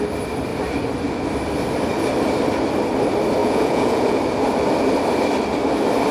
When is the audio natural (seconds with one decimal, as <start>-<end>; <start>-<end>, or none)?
0.0-3.4; 4.2-6.1